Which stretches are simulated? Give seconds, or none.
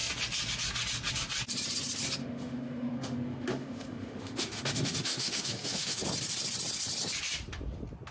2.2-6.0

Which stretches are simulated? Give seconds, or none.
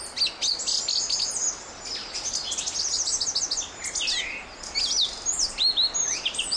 none